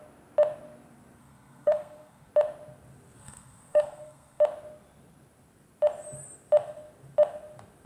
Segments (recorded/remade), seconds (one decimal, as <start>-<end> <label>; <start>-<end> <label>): 0.0-1.2 recorded; 1.2-2.3 remade; 2.3-3.2 recorded; 3.2-4.4 remade; 4.4-7.9 recorded